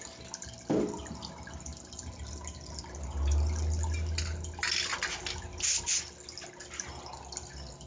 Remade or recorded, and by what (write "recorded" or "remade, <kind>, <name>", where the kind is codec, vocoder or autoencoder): recorded